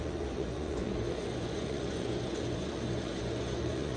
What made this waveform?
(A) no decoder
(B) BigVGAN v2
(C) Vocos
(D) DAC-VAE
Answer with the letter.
C